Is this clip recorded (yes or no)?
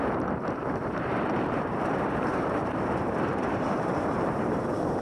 no